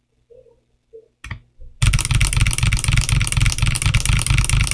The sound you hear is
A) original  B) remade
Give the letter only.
A